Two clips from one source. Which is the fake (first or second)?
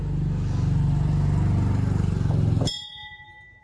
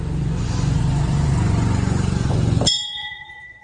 second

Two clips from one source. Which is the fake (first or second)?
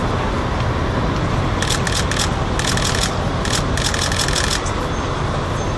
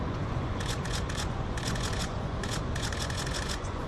second